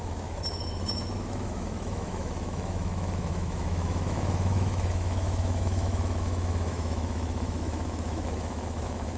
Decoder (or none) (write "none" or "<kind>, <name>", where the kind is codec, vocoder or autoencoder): autoencoder, DAC-VAE